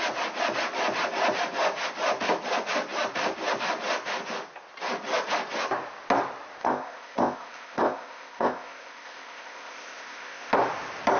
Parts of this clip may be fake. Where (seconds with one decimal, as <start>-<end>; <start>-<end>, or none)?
6.6-10.5